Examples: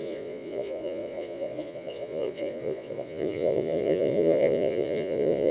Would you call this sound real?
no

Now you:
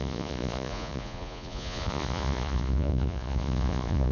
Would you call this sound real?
no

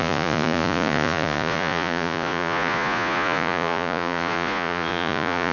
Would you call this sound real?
no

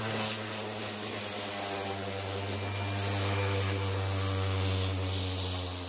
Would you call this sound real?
yes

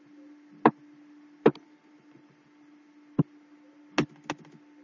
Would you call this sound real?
yes